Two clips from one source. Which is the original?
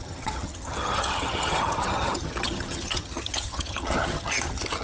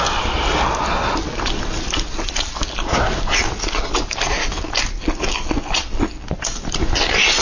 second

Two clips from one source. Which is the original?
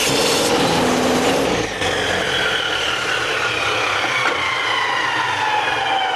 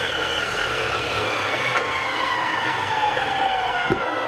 first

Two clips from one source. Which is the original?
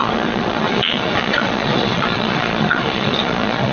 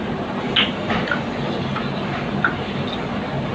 second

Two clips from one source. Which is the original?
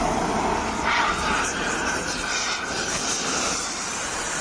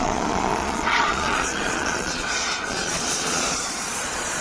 first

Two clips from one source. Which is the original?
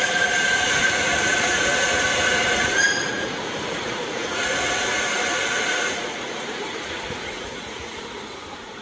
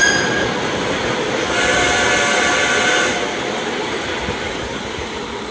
second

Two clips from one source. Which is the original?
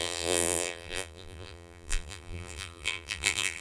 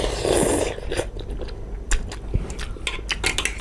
second